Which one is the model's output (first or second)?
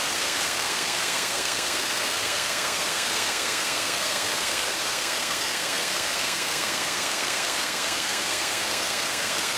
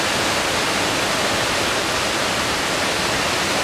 first